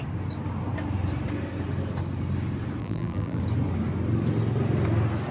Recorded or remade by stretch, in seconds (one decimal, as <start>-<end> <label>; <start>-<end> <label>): 0.0-2.8 recorded; 2.8-3.4 remade; 3.4-5.3 recorded